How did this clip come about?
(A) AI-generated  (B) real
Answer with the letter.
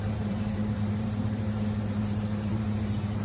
A